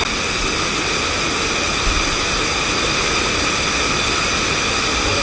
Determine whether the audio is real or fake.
real